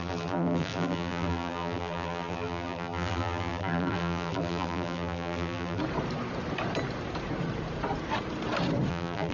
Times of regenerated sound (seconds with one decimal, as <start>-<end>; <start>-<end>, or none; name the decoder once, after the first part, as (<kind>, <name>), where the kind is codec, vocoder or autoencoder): 0.0-5.8 (vocoder, BigVGAN v2); 8.9-9.3